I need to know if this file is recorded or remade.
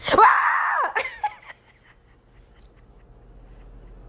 recorded